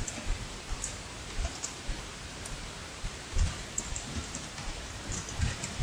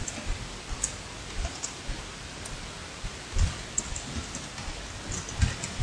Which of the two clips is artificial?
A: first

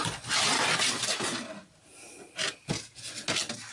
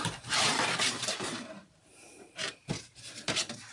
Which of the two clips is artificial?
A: second